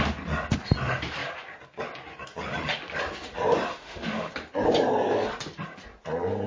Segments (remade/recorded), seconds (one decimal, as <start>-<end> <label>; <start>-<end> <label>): 0.0-3.7 recorded; 3.7-4.3 remade; 4.3-6.5 recorded